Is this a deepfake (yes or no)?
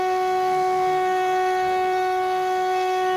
yes